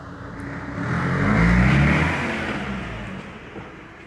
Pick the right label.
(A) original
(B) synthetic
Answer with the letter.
A